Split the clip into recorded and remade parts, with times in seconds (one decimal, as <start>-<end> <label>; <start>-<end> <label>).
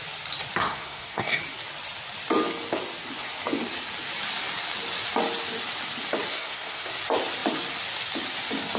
0.0-0.6 recorded; 0.6-1.4 remade; 1.4-6.3 recorded; 6.3-6.9 remade; 6.9-8.8 recorded